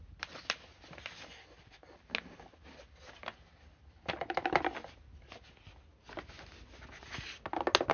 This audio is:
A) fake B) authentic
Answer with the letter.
B